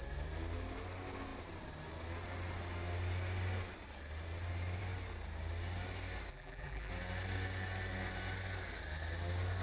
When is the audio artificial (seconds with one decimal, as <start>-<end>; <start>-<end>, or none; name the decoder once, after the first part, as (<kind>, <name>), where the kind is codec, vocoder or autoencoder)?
6.3-6.9 (vocoder, BigVGAN v2)